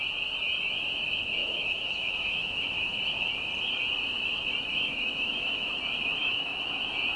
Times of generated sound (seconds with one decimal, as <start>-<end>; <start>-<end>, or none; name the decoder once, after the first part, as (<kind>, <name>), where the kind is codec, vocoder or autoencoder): 1.4-3.0 (autoencoder, DAC-VAE); 4.7-5.7; 6.2-6.8